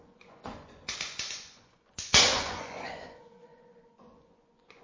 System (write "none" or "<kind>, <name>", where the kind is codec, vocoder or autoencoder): vocoder, Vocos